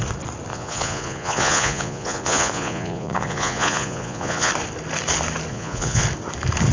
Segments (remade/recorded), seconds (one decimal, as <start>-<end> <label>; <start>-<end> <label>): 0.0-0.5 recorded; 0.5-4.5 remade; 4.5-5.5 recorded; 5.5-6.0 remade; 6.0-6.7 recorded